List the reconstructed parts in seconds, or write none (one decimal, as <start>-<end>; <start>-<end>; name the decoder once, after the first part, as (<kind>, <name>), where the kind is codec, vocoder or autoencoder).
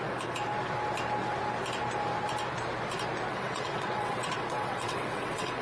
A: 3.3-5.6 (vocoder, WaveNeXt)